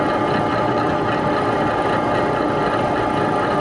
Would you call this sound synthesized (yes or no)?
no